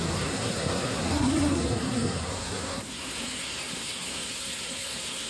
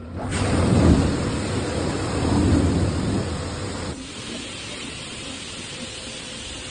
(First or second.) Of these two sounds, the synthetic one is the first